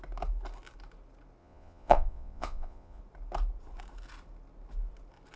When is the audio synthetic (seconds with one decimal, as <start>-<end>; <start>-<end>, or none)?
1.4-3.0